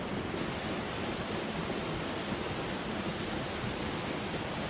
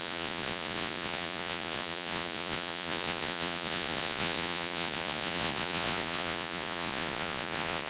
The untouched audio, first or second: first